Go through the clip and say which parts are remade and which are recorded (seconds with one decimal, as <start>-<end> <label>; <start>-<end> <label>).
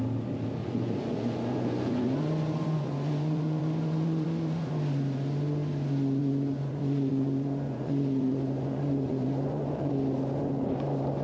0.0-0.6 recorded; 0.6-4.7 remade; 4.7-6.2 recorded; 6.2-9.9 remade; 9.9-11.2 recorded